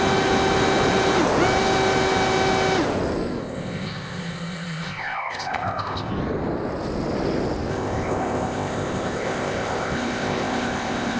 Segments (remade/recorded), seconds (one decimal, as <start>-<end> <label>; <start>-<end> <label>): 0.0-3.4 recorded; 3.4-6.1 remade; 6.1-7.7 recorded; 7.7-11.2 remade